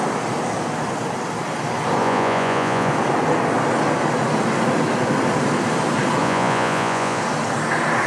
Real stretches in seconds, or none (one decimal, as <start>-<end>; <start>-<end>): 0.0-2.0; 2.9-6.2; 7.2-8.1

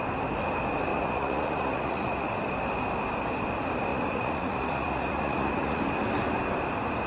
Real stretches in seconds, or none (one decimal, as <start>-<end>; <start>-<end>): 0.0-0.9; 2.3-3.9; 5.8-7.1

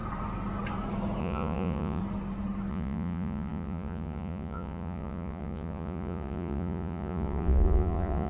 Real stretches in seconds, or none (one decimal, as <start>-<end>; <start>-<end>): 0.0-1.2; 2.0-2.7

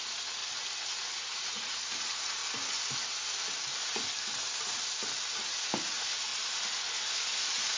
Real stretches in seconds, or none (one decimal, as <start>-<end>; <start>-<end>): 0.4-1.3; 2.4-5.8; 6.3-6.9

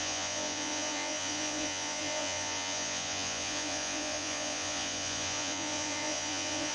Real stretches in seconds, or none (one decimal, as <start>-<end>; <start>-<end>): none

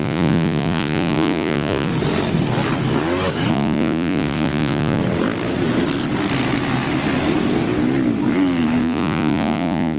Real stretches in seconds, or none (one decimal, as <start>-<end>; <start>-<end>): 1.9-3.5; 5.0-8.8